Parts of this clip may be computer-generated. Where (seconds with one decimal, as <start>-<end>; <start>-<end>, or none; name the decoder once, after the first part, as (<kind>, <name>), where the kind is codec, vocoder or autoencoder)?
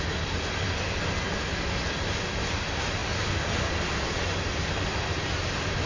none